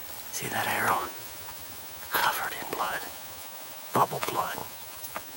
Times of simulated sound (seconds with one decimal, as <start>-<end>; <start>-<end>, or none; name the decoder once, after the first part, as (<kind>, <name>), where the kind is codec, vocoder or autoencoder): 0.9-2.2 (vocoder, Vocos); 2.8-5.4